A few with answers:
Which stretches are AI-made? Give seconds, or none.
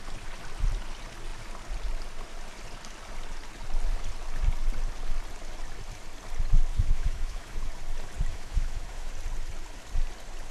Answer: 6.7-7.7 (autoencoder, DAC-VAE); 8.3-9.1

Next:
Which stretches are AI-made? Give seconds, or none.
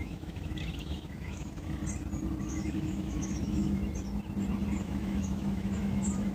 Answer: 0.0-1.8 (autoencoder, DAC-VAE); 2.4-3.8; 4.8-6.3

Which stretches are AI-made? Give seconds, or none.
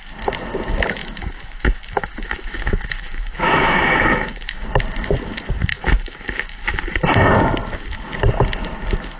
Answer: 1.0-4.7 (autoencoder, DAC-VAE); 5.7-6.8